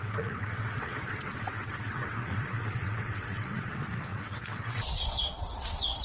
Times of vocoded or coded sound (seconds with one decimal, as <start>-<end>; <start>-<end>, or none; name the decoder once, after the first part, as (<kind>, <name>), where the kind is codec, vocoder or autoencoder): 0.0-6.0 (vocoder, WaveNeXt)

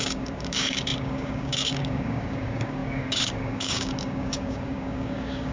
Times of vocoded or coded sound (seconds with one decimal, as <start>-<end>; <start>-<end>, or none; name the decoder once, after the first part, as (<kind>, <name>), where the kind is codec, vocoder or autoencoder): 0.0-5.5 (codec, DAC)

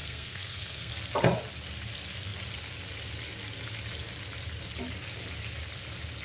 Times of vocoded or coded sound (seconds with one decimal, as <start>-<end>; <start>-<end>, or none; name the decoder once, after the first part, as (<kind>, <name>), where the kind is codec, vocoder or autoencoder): 0.0-0.9 (codec, SNAC)

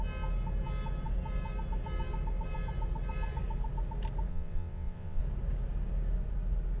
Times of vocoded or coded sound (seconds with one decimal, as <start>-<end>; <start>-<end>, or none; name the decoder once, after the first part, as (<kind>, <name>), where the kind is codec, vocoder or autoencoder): 4.3-5.2 (vocoder, WaveNeXt)